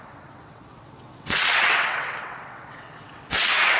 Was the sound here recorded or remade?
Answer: remade